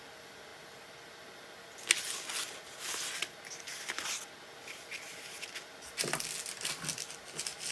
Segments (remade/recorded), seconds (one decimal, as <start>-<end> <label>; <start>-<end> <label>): 0.0-7.7 recorded